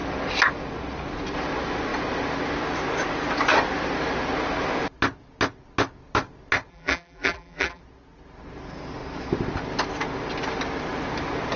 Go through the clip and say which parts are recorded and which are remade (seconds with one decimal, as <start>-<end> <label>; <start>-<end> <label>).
0.0-6.7 recorded; 6.7-7.8 remade; 7.8-11.6 recorded